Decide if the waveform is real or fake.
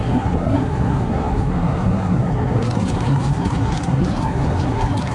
fake